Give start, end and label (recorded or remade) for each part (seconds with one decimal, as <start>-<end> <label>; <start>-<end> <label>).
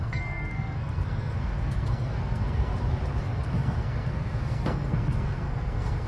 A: 0.0-2.7 remade; 2.7-3.2 recorded; 3.2-6.1 remade